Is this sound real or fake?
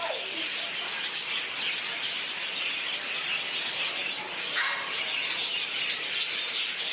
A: real